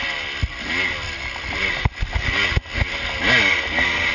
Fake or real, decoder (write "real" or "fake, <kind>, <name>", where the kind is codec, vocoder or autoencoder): real